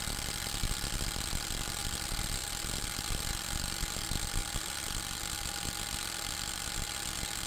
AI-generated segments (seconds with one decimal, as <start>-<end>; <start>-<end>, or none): 4.4-5.2